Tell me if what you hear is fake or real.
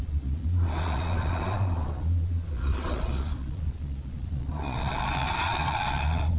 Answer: fake